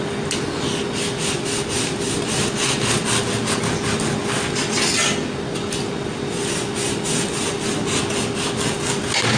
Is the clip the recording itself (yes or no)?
yes